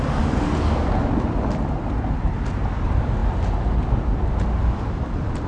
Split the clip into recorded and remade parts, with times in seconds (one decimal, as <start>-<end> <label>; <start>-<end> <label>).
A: 0.0-5.5 recorded